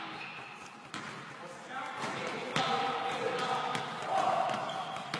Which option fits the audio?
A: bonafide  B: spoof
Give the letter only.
A